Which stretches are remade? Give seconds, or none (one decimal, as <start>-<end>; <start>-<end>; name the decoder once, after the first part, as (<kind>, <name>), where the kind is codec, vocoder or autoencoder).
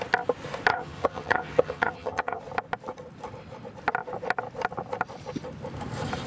0.7-2.4 (vocoder, HiFi-GAN)